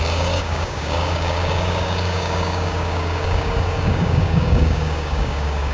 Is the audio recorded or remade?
remade